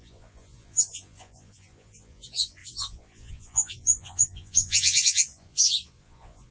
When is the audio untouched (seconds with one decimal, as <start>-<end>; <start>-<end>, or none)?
none